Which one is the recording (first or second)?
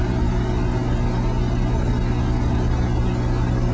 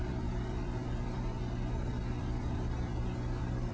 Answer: first